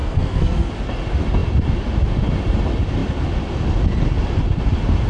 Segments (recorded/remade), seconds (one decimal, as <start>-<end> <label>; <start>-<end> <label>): 0.0-0.7 remade; 0.7-5.1 recorded